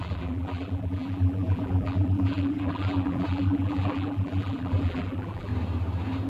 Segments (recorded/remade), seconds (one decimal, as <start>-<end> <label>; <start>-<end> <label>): 0.0-5.5 remade; 5.5-6.3 recorded